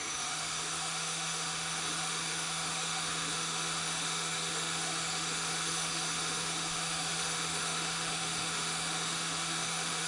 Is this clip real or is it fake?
fake